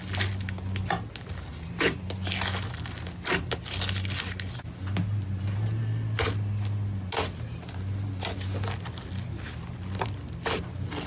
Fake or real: real